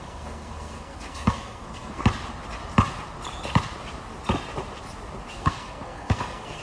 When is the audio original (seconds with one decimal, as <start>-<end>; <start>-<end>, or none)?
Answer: 2.0-5.3